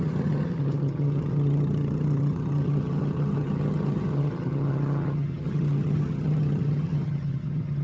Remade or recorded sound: remade